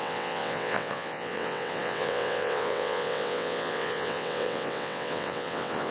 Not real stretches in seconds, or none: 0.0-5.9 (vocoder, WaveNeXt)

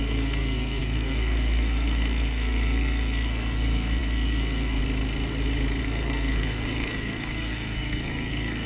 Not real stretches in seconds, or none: 0.0-4.8 (codec, SNAC); 5.8-8.7

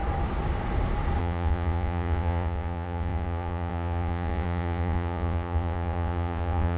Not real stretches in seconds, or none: 1.2-6.8 (vocoder, Vocos)

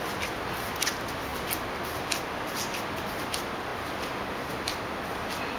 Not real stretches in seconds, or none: none

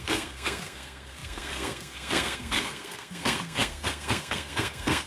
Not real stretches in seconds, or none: 0.0-5.1 (codec, SNAC)

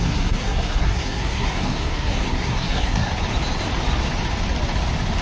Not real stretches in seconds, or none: 0.0-3.1 (codec, SNAC)

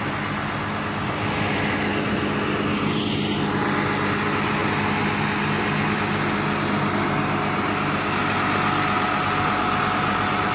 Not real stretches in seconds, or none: none

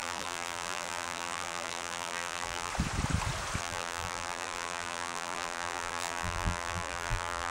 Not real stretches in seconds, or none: 0.0-2.7 (vocoder, BigVGAN v2); 3.6-7.5